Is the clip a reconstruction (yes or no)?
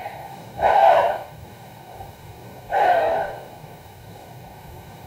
yes